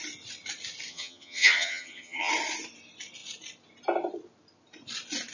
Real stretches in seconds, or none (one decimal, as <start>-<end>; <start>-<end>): 0.0-0.9; 2.3-5.3